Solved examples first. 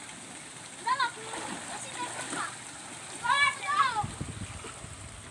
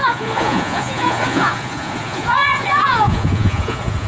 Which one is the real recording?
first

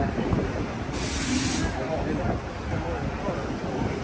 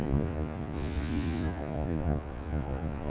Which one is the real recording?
first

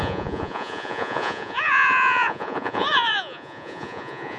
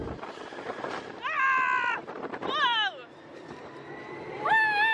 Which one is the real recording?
second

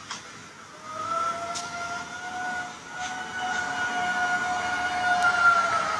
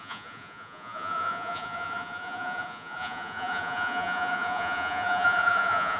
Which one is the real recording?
first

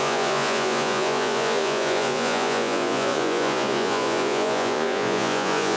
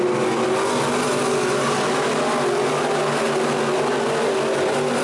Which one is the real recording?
second